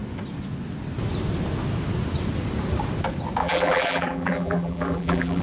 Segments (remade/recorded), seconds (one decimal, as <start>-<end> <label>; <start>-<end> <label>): 0.0-3.4 recorded; 3.4-5.4 remade